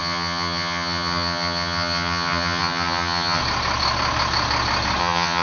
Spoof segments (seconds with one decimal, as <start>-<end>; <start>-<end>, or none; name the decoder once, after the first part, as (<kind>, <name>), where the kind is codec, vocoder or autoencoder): 0.0-3.4 (vocoder, HiFi-GAN); 5.0-5.4